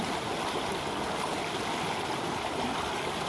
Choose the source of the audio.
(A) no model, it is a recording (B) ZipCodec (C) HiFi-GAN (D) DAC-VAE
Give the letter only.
A